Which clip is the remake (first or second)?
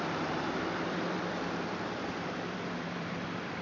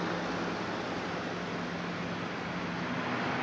first